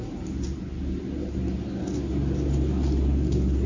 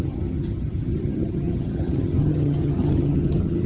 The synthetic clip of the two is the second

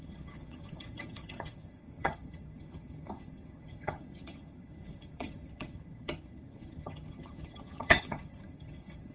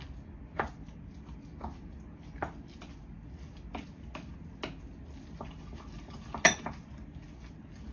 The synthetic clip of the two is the first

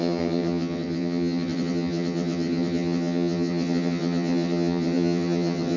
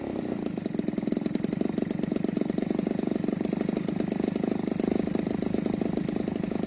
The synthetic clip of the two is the first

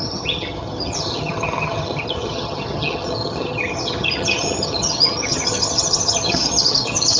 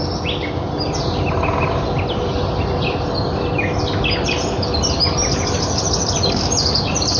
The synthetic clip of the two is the first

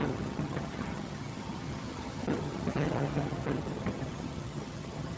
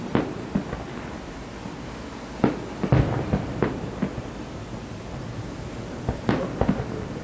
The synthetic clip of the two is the first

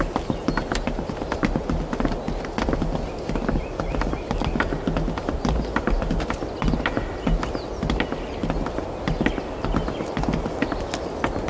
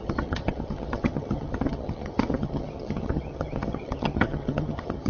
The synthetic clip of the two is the second